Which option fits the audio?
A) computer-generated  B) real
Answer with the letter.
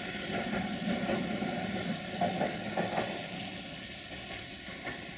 B